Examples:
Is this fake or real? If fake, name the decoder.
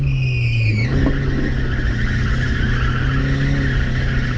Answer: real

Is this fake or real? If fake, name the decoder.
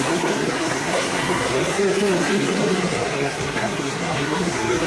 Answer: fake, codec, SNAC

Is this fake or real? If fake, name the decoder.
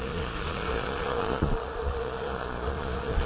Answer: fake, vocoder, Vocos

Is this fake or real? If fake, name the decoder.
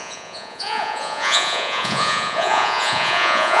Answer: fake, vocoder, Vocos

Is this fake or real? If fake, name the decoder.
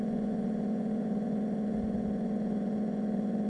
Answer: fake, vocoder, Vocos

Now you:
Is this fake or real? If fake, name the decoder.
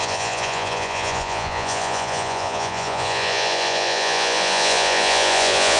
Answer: fake, vocoder, Vocos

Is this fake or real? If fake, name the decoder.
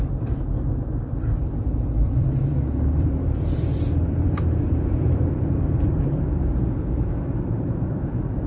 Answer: fake, vocoder, BigVGAN v2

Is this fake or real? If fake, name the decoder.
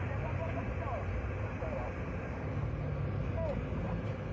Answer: real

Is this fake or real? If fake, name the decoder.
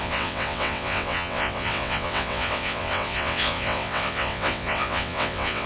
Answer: fake, vocoder, WaveNeXt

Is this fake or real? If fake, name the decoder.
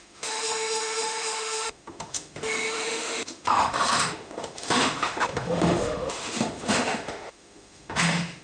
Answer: fake, autoencoder, DAC-VAE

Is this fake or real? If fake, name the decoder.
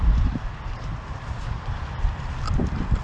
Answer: fake, vocoder, BigVGAN v2